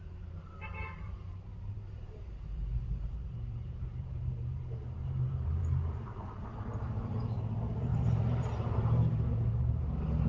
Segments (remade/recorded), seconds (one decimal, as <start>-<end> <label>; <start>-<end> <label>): 0.0-10.3 remade